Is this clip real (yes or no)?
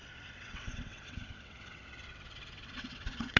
no